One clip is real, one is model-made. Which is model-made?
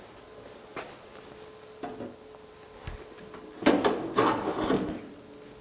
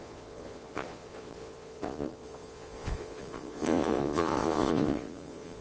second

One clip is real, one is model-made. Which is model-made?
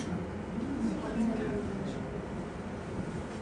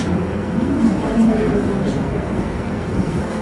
second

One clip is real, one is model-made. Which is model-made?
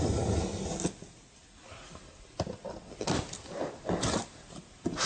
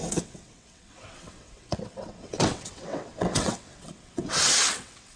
second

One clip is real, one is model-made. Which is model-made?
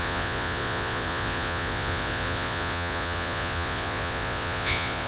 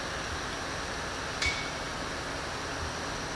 first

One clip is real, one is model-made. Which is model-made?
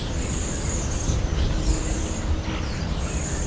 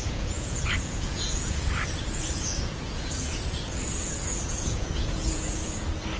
second